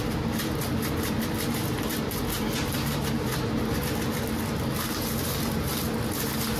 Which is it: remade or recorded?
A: recorded